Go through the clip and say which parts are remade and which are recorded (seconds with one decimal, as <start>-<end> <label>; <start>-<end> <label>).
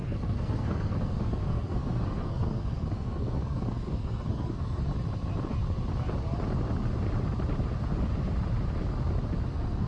0.0-4.9 remade; 4.9-9.5 recorded; 9.5-9.9 remade